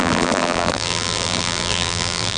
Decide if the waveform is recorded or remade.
remade